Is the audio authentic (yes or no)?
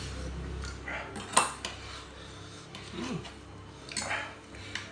yes